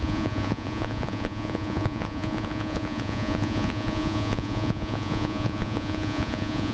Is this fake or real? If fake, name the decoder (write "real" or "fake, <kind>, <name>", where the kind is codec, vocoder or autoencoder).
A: fake, vocoder, Vocos